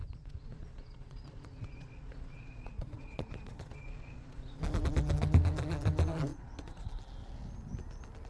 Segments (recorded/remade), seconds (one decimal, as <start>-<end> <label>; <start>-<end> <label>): 0.0-4.6 remade; 4.6-6.3 recorded; 6.3-6.9 remade; 6.9-8.3 recorded

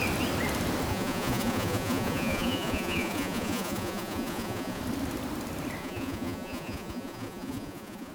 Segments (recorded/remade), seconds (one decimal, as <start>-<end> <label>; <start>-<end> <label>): 0.0-0.9 recorded; 0.9-4.8 remade; 4.8-5.8 recorded; 5.8-8.1 remade

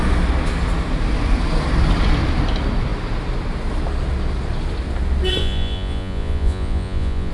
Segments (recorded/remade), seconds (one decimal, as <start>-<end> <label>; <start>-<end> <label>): 0.0-5.4 recorded; 5.4-7.3 remade

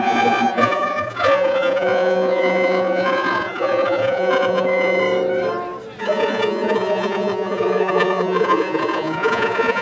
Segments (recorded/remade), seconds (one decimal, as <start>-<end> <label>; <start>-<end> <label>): 0.0-5.0 remade; 5.0-6.0 recorded; 6.0-9.8 remade

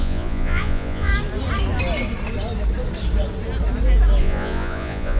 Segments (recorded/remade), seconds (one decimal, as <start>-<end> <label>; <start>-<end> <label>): 0.0-1.1 remade; 1.1-4.2 recorded; 4.2-5.2 remade

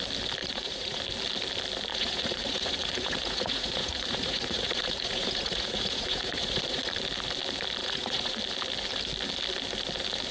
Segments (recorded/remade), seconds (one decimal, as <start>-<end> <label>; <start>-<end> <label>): 0.0-0.4 recorded; 0.4-1.0 remade; 1.0-1.9 recorded; 1.9-6.9 remade; 6.9-7.8 recorded; 7.8-8.4 remade; 8.4-10.3 recorded